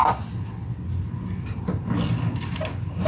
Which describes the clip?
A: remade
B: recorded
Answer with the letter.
B